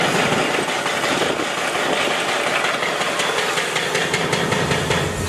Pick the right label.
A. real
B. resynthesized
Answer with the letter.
A